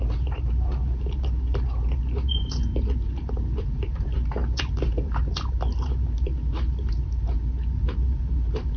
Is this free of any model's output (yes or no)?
no